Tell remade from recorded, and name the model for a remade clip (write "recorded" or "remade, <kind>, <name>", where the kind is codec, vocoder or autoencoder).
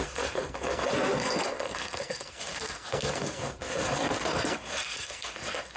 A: remade, codec, SNAC